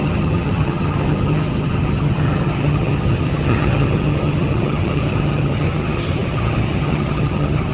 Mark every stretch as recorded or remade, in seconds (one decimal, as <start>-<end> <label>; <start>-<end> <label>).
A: 0.0-7.7 remade